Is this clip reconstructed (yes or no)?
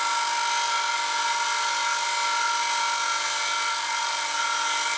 no